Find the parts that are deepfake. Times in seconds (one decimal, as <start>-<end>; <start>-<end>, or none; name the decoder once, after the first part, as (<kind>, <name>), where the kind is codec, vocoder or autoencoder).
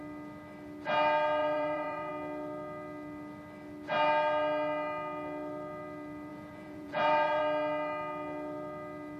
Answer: 1.4-2.1 (vocoder, Vocos); 6.3-7.4